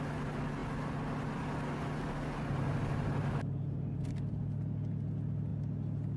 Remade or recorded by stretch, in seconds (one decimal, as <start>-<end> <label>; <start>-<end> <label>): 0.0-6.2 recorded